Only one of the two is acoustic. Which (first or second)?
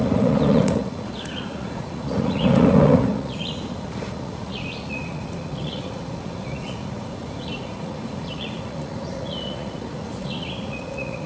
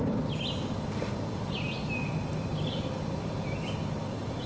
second